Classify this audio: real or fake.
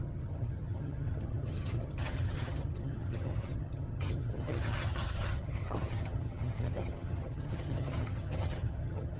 fake